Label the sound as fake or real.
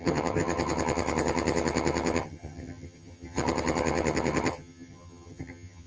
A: fake